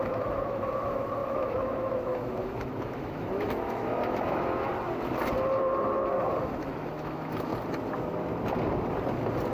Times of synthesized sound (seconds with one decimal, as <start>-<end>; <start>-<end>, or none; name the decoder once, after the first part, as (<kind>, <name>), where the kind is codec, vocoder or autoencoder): 0.0-4.7 (autoencoder, DAC-VAE); 6.4-7.5